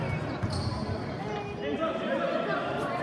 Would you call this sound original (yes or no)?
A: yes